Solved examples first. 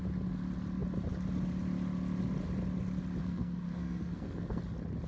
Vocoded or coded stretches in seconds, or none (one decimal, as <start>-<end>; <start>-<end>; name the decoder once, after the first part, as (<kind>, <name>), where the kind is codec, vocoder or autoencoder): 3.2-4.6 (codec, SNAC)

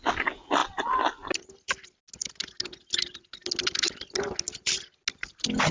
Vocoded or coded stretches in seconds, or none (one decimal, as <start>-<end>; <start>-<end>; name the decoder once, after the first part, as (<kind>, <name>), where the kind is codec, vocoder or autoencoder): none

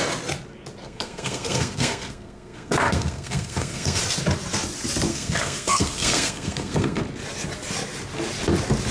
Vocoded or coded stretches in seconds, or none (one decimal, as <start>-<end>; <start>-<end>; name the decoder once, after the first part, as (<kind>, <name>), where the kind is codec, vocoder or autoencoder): 0.8-4.0 (codec, SNAC); 5.1-7.0

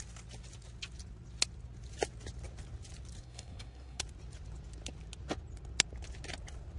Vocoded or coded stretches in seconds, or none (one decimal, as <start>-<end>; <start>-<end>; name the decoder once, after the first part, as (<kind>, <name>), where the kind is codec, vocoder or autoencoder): 3.2-4.0 (codec, SNAC)